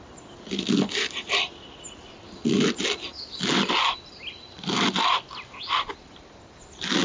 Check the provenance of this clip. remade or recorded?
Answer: recorded